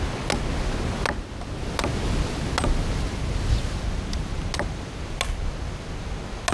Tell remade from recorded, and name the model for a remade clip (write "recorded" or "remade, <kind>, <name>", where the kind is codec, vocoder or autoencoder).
recorded